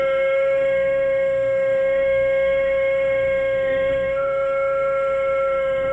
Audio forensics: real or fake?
fake